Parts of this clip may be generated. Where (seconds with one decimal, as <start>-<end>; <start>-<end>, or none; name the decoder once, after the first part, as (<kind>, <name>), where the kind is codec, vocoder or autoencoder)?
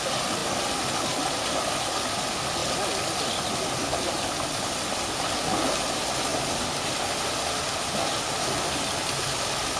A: none